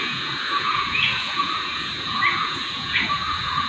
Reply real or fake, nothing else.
fake